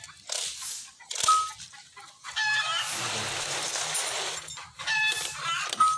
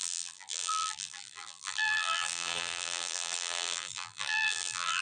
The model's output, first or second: second